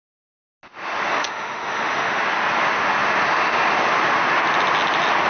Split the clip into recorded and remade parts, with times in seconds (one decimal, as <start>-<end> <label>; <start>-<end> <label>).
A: 0.0-1.1 recorded; 1.1-2.2 remade; 2.2-5.3 recorded